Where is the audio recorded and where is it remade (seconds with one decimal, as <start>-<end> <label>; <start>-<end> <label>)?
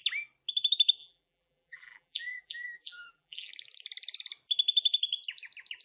0.0-1.0 recorded; 1.0-3.5 remade; 3.5-5.8 recorded